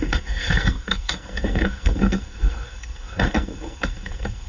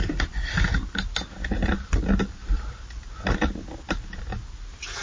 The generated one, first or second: first